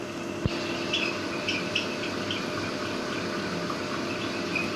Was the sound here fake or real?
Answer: real